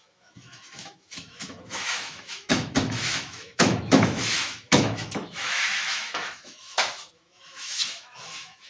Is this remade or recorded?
remade